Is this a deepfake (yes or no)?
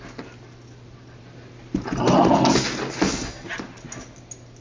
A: no